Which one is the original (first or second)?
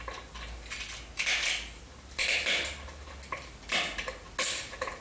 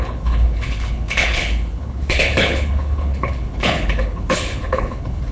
first